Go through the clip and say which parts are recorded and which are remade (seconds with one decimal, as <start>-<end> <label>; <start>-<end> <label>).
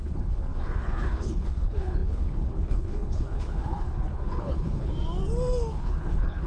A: 0.0-4.9 remade; 4.9-5.7 recorded; 5.7-6.5 remade